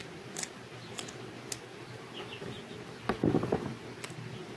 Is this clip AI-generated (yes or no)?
no